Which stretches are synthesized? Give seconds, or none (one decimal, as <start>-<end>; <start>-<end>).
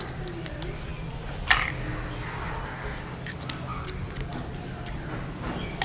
none